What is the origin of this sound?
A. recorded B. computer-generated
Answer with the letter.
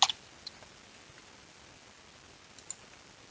A